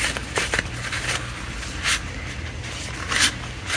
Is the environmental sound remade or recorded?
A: recorded